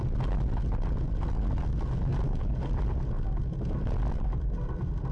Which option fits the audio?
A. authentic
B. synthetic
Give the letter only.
A